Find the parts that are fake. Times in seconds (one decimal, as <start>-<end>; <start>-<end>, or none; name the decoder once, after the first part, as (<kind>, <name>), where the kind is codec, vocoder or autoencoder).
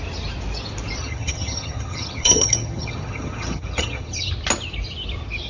1.0-4.3 (vocoder, HiFi-GAN)